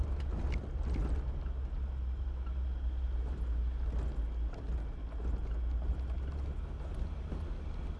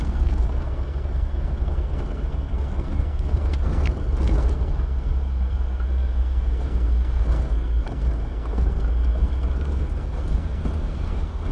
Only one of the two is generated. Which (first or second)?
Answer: second